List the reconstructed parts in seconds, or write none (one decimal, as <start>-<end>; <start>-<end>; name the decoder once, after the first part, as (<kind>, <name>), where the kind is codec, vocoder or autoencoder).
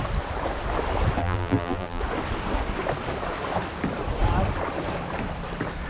1.2-2.0 (vocoder, BigVGAN v2)